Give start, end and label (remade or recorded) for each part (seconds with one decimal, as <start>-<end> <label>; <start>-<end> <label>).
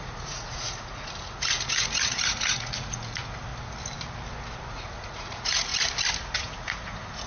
0.0-3.5 remade; 3.5-4.7 recorded; 4.7-5.7 remade; 5.7-6.2 recorded; 6.2-7.3 remade